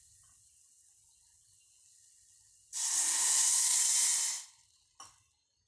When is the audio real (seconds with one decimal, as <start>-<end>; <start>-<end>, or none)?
0.0-5.7